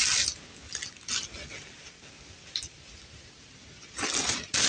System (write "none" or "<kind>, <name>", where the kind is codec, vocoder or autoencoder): none